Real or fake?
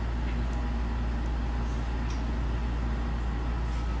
real